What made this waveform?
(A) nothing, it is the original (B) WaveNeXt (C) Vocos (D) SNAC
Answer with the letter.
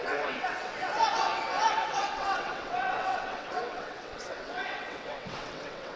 B